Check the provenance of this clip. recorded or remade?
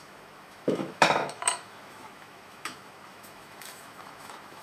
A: remade